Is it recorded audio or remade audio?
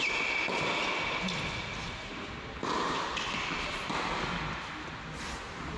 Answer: recorded